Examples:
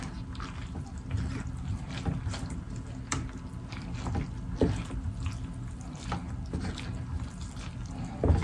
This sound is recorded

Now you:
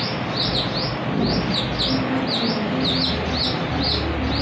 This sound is recorded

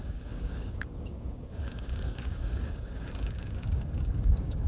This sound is remade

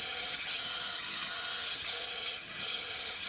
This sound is remade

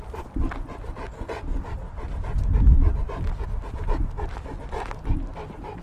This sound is recorded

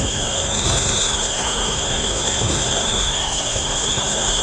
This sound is remade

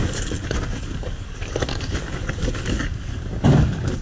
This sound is remade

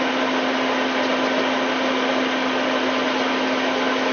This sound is recorded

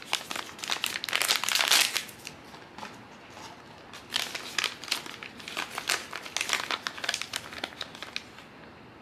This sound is recorded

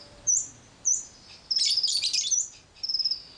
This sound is remade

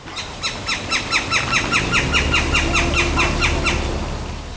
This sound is recorded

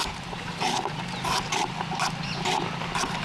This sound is recorded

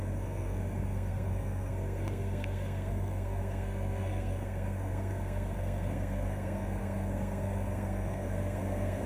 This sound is remade